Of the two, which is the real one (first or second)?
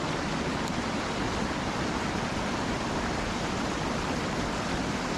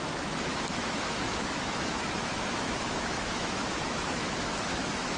first